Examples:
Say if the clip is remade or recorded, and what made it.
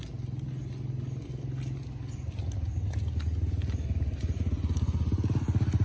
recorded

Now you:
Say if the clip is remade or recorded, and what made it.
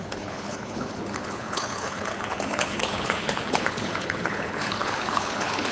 remade, codec, HILCodec